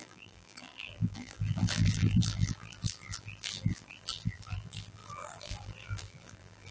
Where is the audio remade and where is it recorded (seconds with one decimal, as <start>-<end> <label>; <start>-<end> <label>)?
0.0-6.7 remade